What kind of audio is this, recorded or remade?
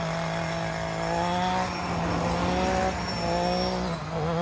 recorded